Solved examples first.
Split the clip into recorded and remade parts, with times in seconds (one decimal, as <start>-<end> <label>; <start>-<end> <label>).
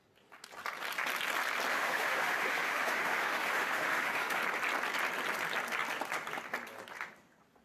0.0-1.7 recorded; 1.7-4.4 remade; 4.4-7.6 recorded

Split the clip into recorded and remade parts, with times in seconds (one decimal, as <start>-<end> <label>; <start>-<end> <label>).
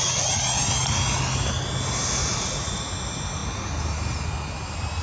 0.0-2.2 recorded; 2.2-2.9 remade; 2.9-5.0 recorded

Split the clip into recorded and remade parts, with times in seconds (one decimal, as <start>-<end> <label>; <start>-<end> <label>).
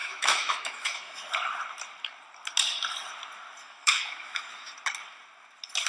0.0-1.3 remade; 1.3-3.6 recorded; 3.6-4.7 remade; 4.7-5.9 recorded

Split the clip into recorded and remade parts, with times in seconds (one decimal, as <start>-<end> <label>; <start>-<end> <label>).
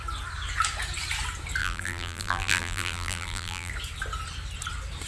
0.0-1.6 recorded; 1.6-3.7 remade; 3.7-5.1 recorded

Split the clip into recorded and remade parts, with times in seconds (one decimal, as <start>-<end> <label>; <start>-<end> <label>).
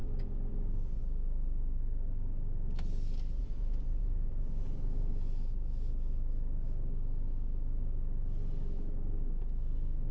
0.0-1.0 remade; 1.0-3.4 recorded; 3.4-5.1 remade; 5.1-10.1 recorded